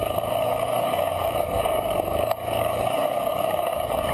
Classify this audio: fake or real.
fake